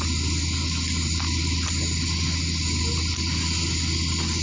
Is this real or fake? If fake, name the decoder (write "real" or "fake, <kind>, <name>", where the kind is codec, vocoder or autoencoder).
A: real